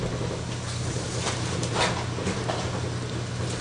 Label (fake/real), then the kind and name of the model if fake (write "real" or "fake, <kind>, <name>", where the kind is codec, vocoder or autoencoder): real